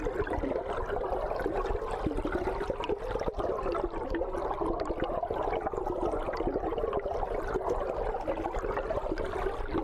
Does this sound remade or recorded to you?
recorded